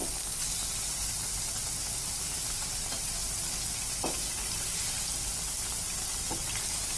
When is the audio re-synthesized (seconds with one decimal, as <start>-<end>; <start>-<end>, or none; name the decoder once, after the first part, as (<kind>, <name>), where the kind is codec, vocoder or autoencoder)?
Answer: none